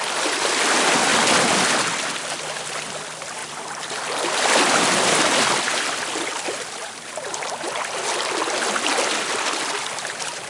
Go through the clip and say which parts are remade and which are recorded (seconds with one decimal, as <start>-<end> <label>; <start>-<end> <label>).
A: 0.0-1.1 remade; 1.1-2.7 recorded; 2.7-8.4 remade; 8.4-8.9 recorded; 8.9-10.5 remade